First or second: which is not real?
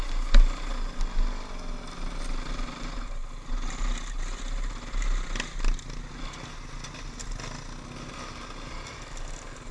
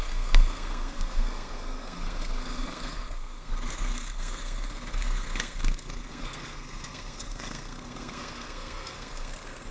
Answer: second